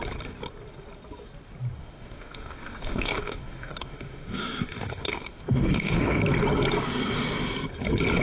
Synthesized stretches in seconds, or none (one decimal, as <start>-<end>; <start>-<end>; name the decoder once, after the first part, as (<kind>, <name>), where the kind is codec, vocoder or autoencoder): 1.8-6.2 (autoencoder, DAC-VAE)